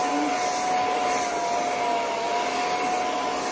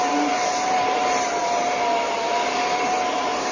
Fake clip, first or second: second